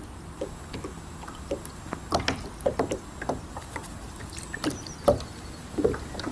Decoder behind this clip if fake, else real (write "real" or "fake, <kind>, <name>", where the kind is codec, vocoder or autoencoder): real